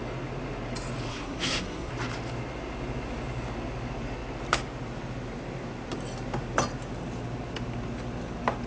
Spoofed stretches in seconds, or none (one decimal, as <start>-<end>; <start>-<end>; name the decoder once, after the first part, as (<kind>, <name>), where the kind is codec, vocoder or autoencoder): 1.1-1.9 (codec, SNAC)